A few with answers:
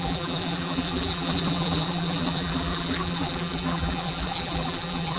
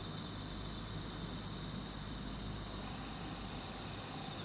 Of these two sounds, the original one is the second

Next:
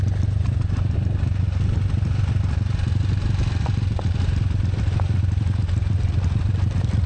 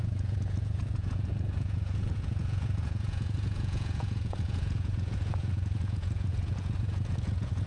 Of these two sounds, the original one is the first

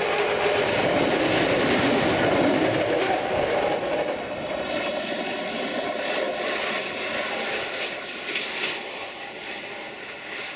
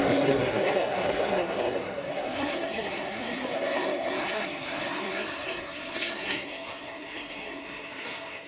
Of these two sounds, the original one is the first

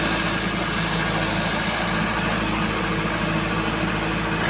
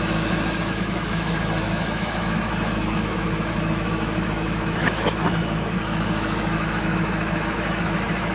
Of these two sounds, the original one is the first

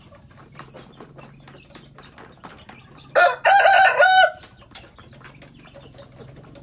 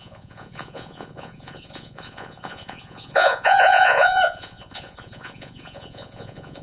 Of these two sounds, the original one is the first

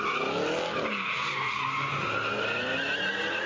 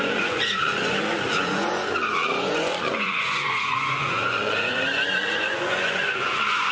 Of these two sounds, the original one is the first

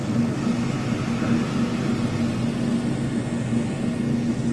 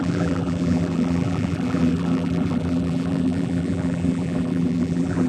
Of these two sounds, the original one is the first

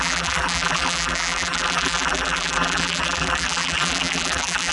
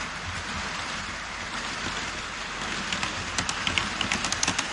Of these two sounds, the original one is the second